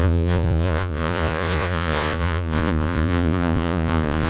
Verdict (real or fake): fake